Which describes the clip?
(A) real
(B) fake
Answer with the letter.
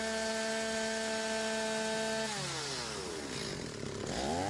A